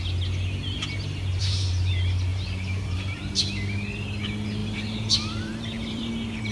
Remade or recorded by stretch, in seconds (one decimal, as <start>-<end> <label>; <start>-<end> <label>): 0.0-1.4 recorded; 1.4-1.9 remade; 1.9-2.3 recorded; 2.3-3.4 remade; 3.4-4.6 recorded; 4.6-6.1 remade; 6.1-6.5 recorded